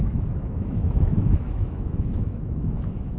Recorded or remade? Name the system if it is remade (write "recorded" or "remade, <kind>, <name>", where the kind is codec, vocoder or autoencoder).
remade, autoencoder, DAC-VAE